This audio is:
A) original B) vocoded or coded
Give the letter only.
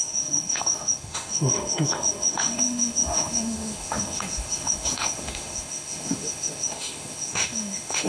B